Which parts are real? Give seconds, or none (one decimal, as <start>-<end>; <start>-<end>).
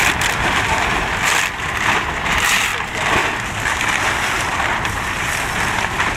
2.7-3.5